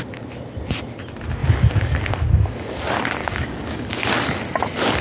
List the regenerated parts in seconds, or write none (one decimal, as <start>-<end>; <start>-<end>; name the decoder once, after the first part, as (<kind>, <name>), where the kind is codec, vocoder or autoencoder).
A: 1.4-2.8 (codec, DAC); 3.2-3.9